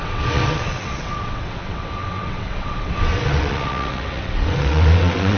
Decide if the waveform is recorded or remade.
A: remade